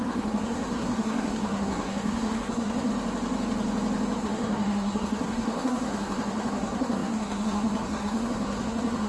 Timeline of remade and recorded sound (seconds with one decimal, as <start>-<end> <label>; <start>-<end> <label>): 0.0-2.9 remade; 2.9-4.2 recorded; 4.2-9.1 remade